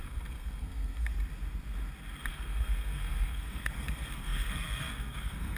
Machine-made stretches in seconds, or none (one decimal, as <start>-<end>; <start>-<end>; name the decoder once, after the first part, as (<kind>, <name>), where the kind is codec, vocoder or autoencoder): 0.0-1.1 (codec, SNAC); 2.3-5.6